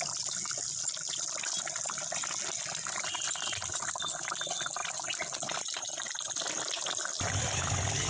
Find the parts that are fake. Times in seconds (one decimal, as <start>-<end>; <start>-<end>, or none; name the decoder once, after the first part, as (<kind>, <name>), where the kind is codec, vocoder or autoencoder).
none